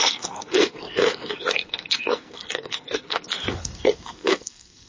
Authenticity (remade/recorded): remade